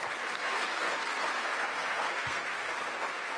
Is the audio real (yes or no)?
no